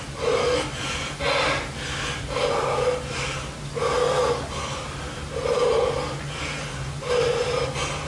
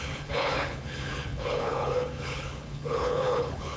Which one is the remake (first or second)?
second